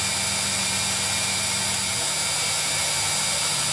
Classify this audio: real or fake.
real